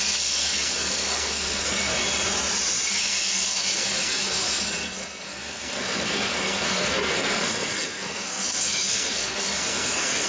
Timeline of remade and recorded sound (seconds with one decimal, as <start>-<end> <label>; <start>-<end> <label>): 0.0-2.0 remade; 2.0-2.9 recorded; 2.9-10.3 remade